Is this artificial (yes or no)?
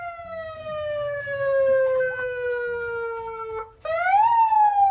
no